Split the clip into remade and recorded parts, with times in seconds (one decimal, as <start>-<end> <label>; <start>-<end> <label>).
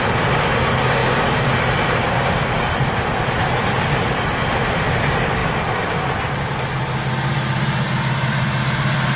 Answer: 0.0-9.2 recorded